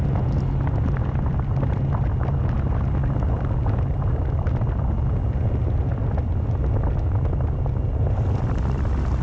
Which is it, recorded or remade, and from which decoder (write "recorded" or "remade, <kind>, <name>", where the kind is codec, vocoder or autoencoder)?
recorded